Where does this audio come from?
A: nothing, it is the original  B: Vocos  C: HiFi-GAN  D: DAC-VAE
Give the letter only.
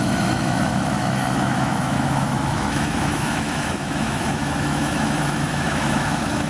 D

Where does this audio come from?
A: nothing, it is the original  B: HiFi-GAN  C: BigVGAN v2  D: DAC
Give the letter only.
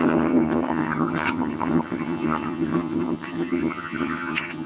B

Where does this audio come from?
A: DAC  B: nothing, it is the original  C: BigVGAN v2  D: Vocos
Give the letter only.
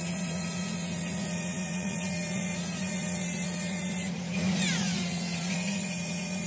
D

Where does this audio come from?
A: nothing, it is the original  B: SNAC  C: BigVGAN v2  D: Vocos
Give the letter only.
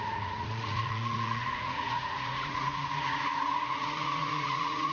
D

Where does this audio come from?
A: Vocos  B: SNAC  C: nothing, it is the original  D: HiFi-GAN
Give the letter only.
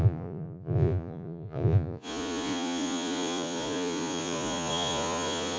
A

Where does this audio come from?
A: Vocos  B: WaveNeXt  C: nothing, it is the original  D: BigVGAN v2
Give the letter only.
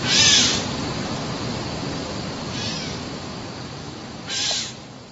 D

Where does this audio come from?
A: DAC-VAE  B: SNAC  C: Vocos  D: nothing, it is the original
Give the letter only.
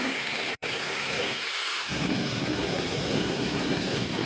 B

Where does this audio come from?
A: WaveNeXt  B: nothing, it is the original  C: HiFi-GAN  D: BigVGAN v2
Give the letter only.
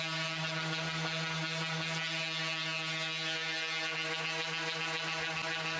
B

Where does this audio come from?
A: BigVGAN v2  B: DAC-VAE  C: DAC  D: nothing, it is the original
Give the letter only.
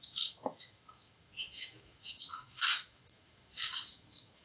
B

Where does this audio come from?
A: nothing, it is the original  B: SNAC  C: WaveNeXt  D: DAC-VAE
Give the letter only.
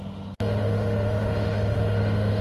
D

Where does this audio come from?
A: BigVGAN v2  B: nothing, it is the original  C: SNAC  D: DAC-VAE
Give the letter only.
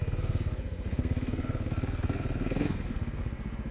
C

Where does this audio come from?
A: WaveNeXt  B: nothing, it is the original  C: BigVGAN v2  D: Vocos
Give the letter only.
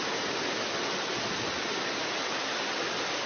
B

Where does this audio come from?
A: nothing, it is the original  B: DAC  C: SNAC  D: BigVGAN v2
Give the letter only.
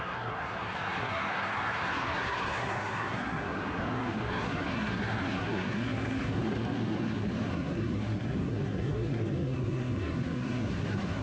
C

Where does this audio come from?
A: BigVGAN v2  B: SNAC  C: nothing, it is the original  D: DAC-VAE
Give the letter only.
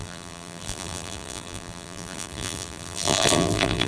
A